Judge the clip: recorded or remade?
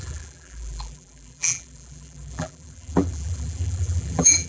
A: remade